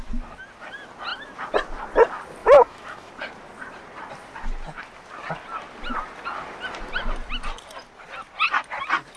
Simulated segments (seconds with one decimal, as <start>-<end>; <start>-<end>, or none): 2.4-3.1